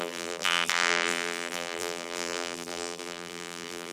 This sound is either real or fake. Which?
fake